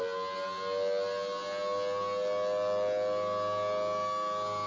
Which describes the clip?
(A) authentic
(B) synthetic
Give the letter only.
A